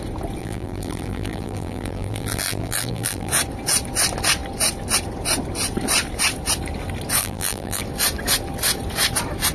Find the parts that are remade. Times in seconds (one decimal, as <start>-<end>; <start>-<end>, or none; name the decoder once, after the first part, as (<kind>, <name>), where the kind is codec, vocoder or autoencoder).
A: 0.4-3.3 (vocoder, BigVGAN v2); 7.2-7.8